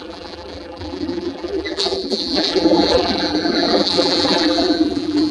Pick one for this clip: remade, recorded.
remade